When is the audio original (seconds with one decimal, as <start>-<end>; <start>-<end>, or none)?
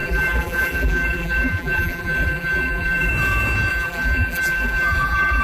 3.1-3.7